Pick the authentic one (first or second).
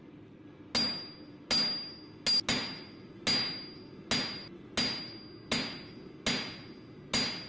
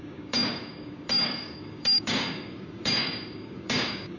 first